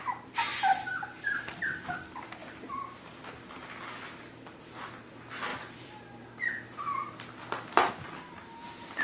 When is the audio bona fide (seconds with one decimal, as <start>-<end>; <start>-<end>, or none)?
0.0-5.5; 7.9-9.0